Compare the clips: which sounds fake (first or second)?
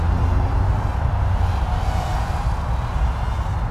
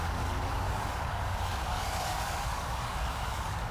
second